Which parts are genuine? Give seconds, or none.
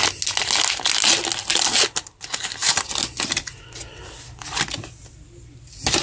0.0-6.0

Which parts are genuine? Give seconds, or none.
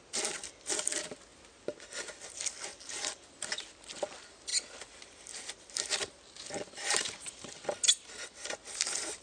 0.0-9.2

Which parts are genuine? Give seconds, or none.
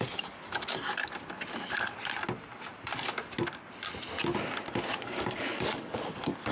1.0-4.9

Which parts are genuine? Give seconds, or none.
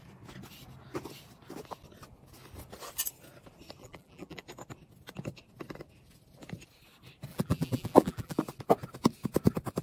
0.0-3.8; 4.4-7.3; 8.4-9.8